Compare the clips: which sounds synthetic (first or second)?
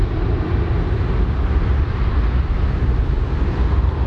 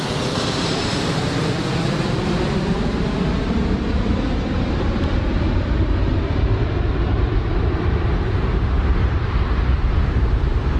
second